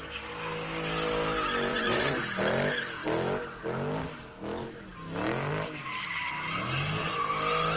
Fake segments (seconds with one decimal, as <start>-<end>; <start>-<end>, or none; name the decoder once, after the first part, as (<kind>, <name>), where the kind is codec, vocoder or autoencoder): 1.7-2.2 (vocoder, Vocos)